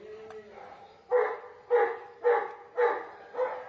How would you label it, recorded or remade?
recorded